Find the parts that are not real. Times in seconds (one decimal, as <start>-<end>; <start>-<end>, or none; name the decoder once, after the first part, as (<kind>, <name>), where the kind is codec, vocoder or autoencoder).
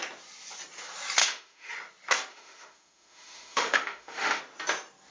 1.2-1.7 (autoencoder, DAC-VAE); 2.3-4.4